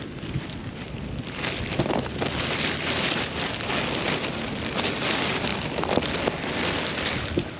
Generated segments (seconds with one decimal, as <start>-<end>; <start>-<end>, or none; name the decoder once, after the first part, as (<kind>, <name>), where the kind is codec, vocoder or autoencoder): none